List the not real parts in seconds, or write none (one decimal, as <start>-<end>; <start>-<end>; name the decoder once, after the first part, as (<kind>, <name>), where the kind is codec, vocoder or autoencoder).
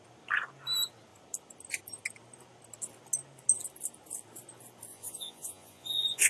4.9-6.3 (vocoder, Vocos)